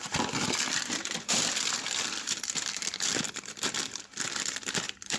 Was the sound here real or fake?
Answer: fake